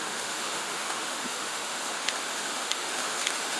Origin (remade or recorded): remade